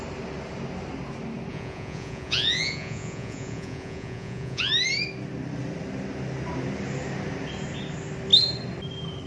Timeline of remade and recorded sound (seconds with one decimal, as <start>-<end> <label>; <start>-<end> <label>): 0.0-1.5 recorded; 1.5-4.7 remade; 4.7-9.3 recorded